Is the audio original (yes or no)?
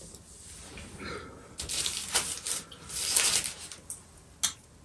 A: yes